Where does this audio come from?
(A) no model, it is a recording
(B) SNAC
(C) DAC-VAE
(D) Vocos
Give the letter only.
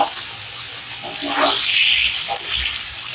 A